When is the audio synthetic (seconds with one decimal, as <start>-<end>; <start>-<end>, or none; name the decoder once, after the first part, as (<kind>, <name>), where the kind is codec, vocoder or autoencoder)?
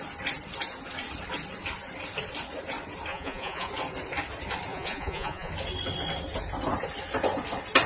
3.1-3.7 (vocoder, Vocos); 4.7-5.5